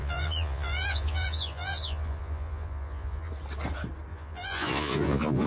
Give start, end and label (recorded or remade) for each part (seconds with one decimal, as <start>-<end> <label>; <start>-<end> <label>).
0.0-3.3 remade; 3.3-4.1 recorded; 4.1-5.5 remade